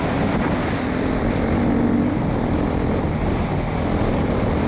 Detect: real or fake real